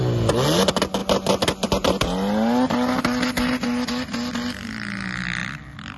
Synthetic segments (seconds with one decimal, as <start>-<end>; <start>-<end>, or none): none